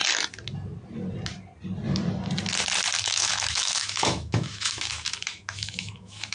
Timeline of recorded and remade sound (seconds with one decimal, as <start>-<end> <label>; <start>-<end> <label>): 0.0-3.0 recorded; 3.0-6.3 remade